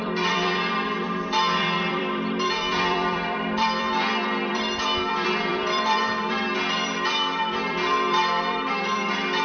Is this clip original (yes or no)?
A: no